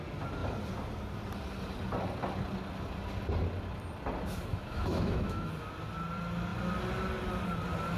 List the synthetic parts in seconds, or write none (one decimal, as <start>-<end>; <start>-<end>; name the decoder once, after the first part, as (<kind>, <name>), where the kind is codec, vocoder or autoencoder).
4.5-5.5 (autoencoder, DAC-VAE)